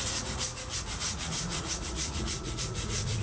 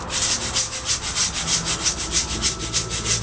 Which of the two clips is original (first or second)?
second